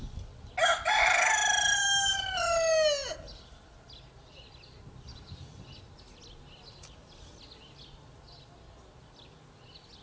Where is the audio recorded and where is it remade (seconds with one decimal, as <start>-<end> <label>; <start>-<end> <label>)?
0.0-10.0 recorded